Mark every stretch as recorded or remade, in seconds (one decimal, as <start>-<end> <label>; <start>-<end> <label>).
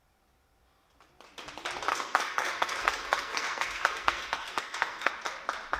0.0-1.9 recorded; 1.9-5.1 remade; 5.1-5.8 recorded